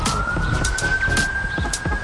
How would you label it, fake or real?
real